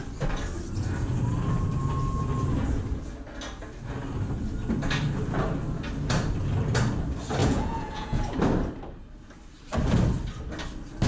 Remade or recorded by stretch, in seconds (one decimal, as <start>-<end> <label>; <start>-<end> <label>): 0.0-7.4 recorded; 7.4-8.2 remade; 8.2-11.1 recorded